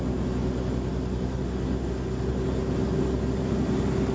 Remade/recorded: recorded